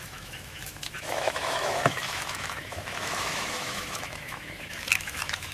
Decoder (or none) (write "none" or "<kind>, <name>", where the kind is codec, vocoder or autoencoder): autoencoder, DAC-VAE